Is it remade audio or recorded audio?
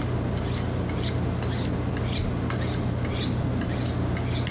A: recorded